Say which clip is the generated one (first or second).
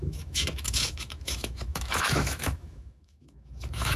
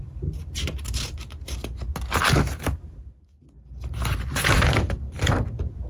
first